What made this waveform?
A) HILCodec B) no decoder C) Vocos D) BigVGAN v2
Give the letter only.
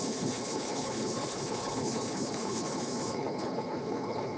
A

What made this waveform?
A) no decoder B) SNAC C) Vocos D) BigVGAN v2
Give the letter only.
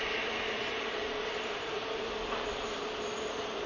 D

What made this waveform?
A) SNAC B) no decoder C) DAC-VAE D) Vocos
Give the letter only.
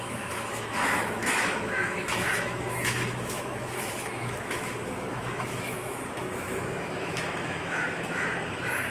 C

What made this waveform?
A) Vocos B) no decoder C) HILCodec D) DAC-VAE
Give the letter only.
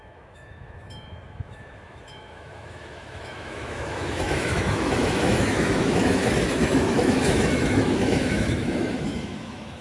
D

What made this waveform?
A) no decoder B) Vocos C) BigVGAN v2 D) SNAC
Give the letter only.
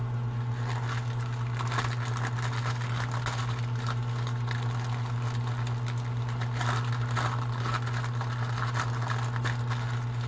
A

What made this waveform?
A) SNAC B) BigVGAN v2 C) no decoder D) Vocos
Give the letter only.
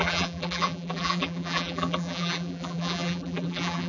B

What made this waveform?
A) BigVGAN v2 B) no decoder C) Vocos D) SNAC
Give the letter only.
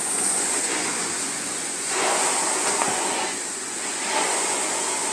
C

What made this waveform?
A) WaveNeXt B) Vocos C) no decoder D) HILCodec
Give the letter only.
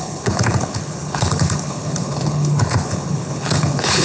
D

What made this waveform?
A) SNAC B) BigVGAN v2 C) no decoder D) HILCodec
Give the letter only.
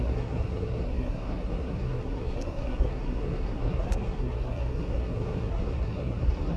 A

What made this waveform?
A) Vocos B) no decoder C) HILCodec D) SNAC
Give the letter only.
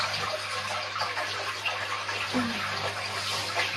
B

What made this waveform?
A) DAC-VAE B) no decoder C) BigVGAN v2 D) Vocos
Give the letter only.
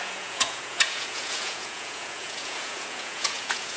D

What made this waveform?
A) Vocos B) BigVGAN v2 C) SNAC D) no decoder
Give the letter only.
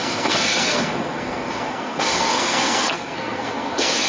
C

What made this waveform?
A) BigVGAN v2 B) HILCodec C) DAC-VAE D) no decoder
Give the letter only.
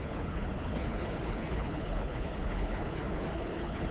B